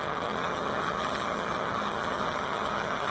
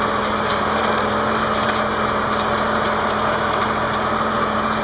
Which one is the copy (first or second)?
first